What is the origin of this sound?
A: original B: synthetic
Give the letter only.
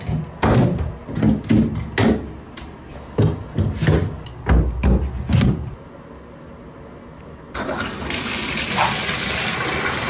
A